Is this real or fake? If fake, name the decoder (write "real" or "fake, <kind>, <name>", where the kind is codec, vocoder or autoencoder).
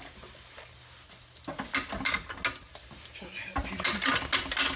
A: real